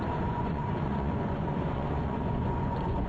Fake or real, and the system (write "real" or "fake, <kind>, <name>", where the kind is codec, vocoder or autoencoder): fake, vocoder, Vocos